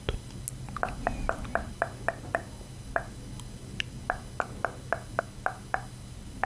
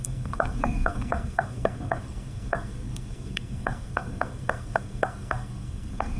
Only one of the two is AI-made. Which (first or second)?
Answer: second